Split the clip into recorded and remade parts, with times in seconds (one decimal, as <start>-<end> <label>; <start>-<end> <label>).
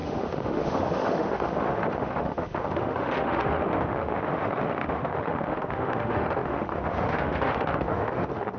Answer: 0.0-8.6 remade